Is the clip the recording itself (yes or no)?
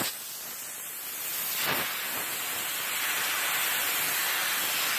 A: yes